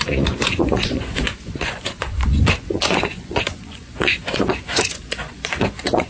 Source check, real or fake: fake